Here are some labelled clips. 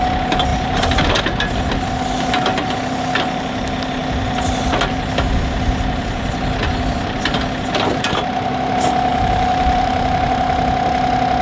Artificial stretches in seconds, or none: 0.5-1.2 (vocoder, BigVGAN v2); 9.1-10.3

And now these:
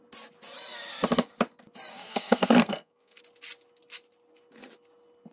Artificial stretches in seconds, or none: 1.9-3.2 (codec, SNAC)

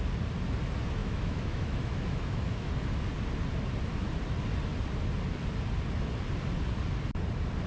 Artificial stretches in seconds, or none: 1.0-2.7 (autoencoder, DAC-VAE)